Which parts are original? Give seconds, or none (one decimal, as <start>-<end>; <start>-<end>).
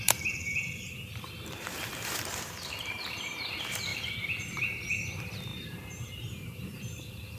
none